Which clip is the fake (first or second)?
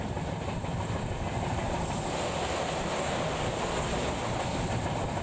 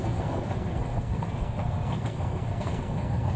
second